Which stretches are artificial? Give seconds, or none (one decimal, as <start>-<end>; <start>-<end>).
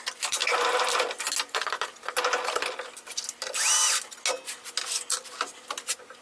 none